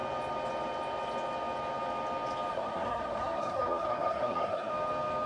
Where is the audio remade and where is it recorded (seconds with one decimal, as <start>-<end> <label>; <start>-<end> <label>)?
0.0-2.5 recorded; 2.5-4.7 remade; 4.7-5.3 recorded